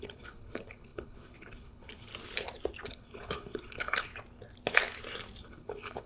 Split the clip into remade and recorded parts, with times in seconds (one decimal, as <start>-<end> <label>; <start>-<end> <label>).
0.0-2.1 remade; 2.1-2.9 recorded; 2.9-4.1 remade; 4.1-5.4 recorded; 5.4-6.1 remade